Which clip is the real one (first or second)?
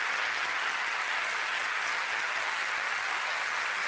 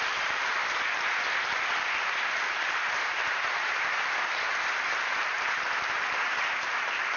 second